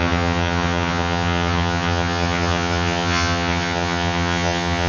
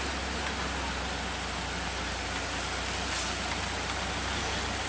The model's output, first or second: first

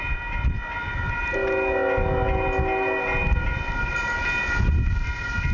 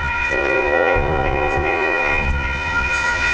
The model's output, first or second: second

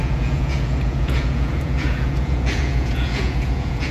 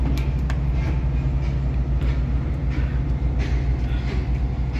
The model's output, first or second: first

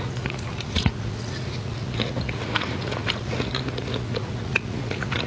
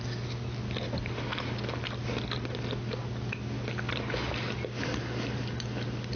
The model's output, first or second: first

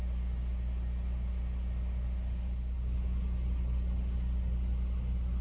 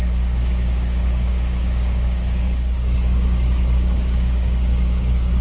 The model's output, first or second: second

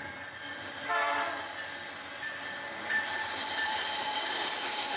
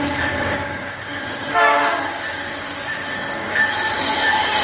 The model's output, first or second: second